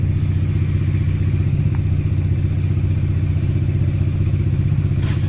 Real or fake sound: real